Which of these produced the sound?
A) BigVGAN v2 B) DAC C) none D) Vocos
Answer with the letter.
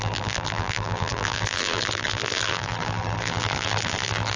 A